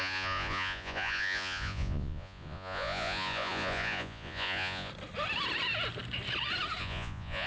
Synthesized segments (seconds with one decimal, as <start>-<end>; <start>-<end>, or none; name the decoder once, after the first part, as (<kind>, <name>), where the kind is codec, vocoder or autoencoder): 0.0-4.9 (vocoder, Vocos); 6.8-7.5